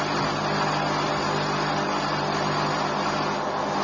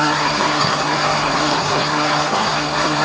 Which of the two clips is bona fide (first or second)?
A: first